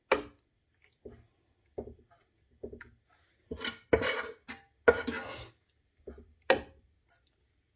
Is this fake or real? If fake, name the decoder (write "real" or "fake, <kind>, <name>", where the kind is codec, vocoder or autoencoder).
real